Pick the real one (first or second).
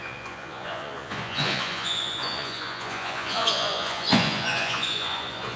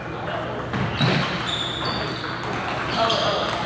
second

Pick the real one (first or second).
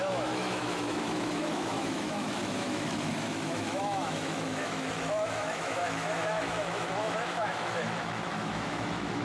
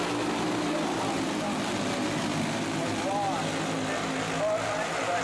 second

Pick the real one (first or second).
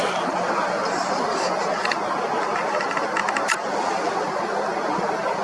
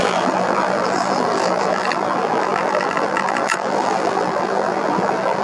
first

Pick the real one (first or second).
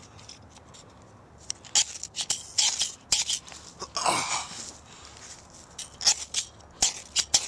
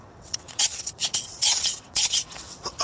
first